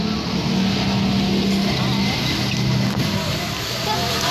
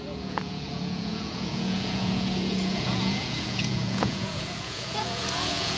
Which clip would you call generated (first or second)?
second